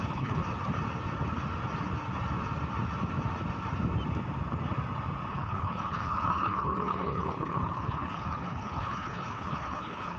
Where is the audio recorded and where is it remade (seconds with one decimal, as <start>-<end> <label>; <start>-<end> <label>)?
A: 0.0-0.4 remade; 0.4-5.3 recorded; 5.3-10.2 remade

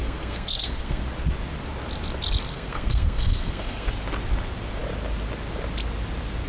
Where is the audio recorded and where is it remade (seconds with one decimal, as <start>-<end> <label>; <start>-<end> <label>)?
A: 0.0-1.0 remade; 1.0-2.5 recorded; 2.5-3.9 remade; 3.9-6.5 recorded

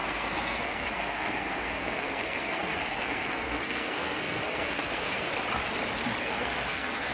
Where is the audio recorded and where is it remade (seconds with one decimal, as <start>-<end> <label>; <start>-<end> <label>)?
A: 0.0-5.3 remade; 5.3-6.2 recorded; 6.2-7.1 remade

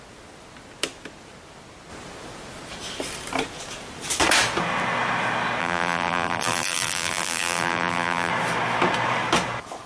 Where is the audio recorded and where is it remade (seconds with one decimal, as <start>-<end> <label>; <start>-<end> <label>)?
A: 0.0-5.6 recorded; 5.6-8.3 remade; 8.3-9.9 recorded